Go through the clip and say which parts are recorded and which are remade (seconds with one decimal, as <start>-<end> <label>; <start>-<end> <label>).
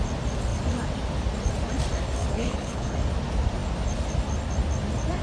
0.0-2.2 recorded; 2.2-3.0 remade; 3.0-5.2 recorded